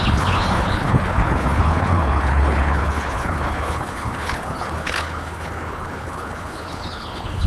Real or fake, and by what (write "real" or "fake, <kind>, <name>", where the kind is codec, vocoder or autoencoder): fake, codec, HILCodec